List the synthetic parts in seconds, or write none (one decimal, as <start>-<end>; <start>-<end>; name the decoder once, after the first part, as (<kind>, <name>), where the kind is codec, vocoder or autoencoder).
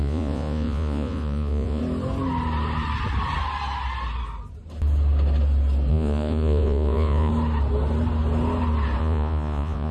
0.0-1.8 (vocoder, Vocos); 5.9-7.3; 9.0-9.9